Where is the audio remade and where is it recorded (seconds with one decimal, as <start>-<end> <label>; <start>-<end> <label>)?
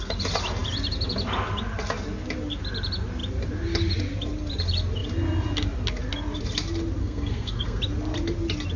0.0-7.0 recorded; 7.0-7.8 remade; 7.8-8.8 recorded